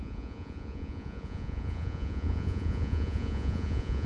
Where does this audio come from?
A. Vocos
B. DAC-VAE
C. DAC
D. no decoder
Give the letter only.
A